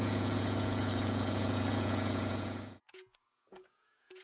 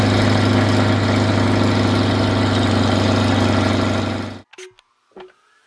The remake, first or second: first